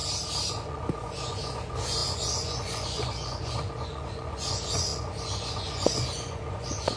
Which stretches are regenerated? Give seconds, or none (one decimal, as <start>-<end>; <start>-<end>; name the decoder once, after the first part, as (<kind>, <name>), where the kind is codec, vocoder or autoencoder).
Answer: 0.5-7.0 (vocoder, Vocos)